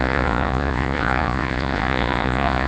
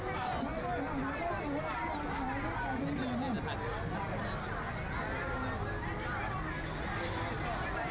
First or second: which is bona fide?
second